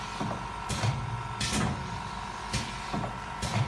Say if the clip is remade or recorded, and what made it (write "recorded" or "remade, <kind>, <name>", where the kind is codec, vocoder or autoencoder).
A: recorded